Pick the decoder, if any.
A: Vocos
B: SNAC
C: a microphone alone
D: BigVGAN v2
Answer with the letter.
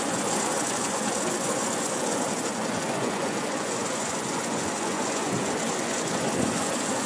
A